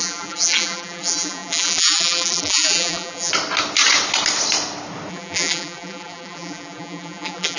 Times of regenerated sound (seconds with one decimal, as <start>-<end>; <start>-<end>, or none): 0.0-3.3; 5.1-7.6